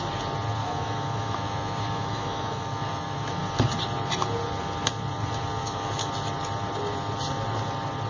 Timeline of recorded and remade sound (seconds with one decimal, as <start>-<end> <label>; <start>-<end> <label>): 0.0-0.6 recorded; 0.6-3.4 remade; 3.4-5.6 recorded; 5.6-6.1 remade; 6.1-8.1 recorded